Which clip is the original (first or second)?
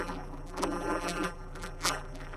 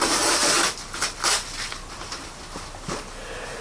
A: second